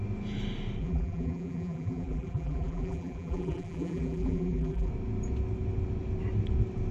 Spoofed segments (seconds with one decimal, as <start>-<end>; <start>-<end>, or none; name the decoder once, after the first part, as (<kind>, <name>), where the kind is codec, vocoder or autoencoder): 0.8-4.9 (vocoder, BigVGAN v2)